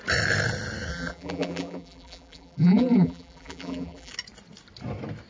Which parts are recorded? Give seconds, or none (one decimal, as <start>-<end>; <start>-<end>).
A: 0.0-0.9; 4.1-5.3